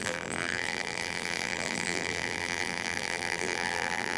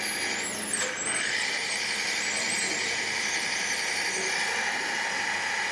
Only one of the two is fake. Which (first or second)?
first